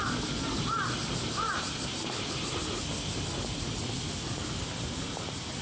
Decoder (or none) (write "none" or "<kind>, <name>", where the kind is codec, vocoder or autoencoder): none